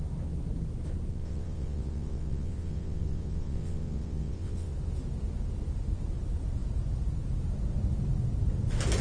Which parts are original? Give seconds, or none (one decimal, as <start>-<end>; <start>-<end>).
0.0-1.1; 4.7-9.0